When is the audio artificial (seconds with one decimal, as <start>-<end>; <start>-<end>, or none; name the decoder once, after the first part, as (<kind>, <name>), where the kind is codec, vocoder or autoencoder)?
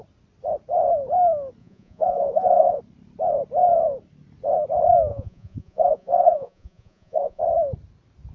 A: 1.6-2.8 (vocoder, Vocos); 5.1-7.4